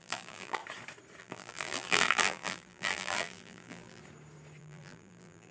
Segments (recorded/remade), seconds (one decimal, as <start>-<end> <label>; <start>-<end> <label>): 0.0-0.6 remade; 0.6-1.2 recorded; 1.2-4.0 remade; 4.0-4.6 recorded; 4.6-5.5 remade